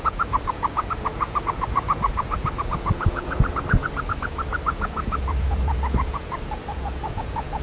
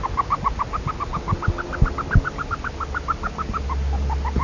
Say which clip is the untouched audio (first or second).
second